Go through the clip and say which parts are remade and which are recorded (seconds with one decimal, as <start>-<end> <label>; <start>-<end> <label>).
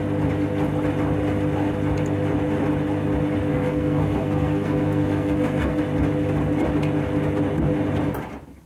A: 0.0-3.5 recorded; 3.5-5.8 remade; 5.8-8.7 recorded